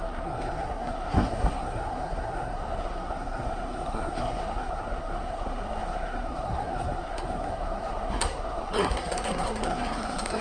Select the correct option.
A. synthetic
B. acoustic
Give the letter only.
A